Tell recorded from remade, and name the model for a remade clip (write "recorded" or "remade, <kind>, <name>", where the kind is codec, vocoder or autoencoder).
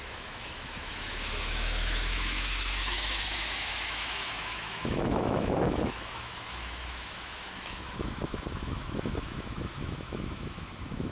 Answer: remade, autoencoder, DAC-VAE